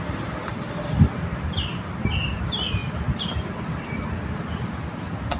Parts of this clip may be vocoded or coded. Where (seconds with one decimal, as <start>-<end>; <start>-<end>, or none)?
1.7-2.4